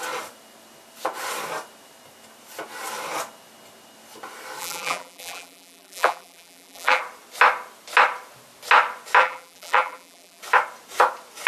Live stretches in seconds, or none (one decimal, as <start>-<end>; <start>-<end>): 0.0-4.6; 7.0-9.2; 10.4-11.5